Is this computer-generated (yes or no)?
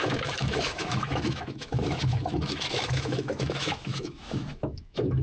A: yes